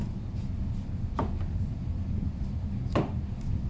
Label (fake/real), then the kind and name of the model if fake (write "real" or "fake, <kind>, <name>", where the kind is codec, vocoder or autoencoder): real